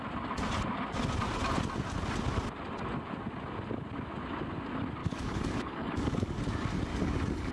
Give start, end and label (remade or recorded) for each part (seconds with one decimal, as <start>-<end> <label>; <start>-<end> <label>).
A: 0.0-5.0 recorded; 5.0-6.4 remade; 6.4-6.9 recorded; 6.9-7.5 remade